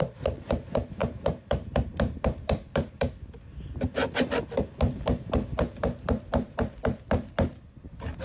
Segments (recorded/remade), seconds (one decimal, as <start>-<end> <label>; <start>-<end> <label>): 0.0-3.2 remade; 3.2-8.2 recorded

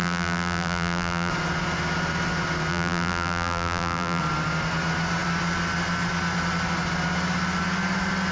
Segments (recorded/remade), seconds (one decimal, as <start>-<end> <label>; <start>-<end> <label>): 0.0-1.3 remade; 1.3-2.7 recorded; 2.7-4.2 remade; 4.2-8.3 recorded

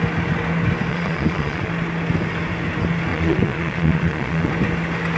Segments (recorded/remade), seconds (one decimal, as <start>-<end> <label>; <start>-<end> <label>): 0.0-0.9 recorded; 0.9-1.7 remade; 1.7-3.1 recorded; 3.1-4.5 remade; 4.5-5.2 recorded

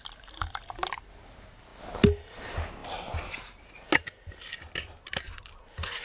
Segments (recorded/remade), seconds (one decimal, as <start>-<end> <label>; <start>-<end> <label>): 0.0-6.0 recorded

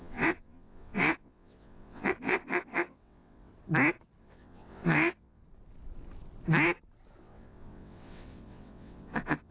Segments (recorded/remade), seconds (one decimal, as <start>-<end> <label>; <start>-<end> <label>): 0.0-3.5 remade; 3.5-4.2 recorded; 4.2-5.4 remade; 5.4-7.2 recorded; 7.2-9.5 remade

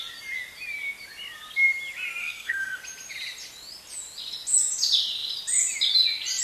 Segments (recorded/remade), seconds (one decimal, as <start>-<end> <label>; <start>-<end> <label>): 0.0-2.2 recorded; 2.2-2.8 remade; 2.8-6.4 recorded